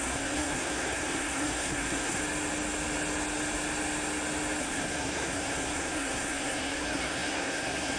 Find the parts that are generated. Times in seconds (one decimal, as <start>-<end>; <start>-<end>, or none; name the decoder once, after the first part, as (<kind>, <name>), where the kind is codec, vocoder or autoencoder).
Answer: 0.0-2.2 (codec, SNAC); 4.6-8.0